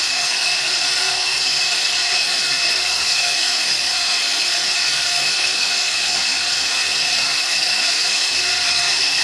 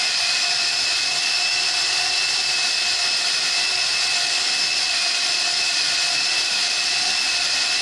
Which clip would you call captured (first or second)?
second